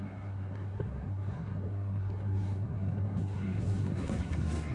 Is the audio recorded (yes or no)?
no